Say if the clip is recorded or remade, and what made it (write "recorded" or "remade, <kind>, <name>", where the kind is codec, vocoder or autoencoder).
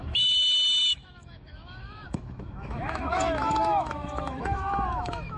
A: remade, autoencoder, DAC-VAE